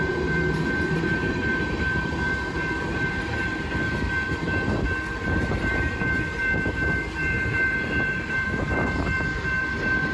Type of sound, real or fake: fake